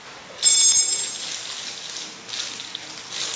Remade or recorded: recorded